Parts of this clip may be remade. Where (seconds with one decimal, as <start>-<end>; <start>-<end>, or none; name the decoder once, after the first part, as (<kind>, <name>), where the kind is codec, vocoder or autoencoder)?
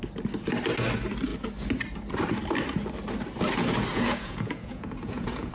3.9-5.5 (vocoder, Vocos)